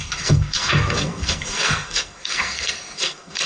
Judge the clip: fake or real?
fake